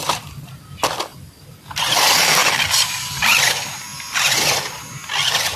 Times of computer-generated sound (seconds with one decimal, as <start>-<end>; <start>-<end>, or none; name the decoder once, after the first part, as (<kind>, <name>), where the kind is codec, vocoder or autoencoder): 2.4-3.5 (vocoder, BigVGAN v2); 3.9-4.9